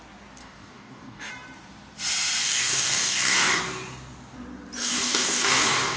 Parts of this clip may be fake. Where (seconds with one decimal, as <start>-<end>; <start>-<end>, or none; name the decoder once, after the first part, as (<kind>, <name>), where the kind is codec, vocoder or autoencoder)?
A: 0.4-1.3 (codec, DAC); 2.4-3.6; 4.8-6.0